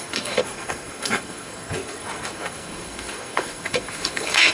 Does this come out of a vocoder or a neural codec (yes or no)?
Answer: yes